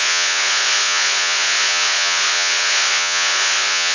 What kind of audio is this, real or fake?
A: fake